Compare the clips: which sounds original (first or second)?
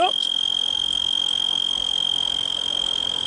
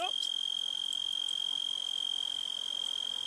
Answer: second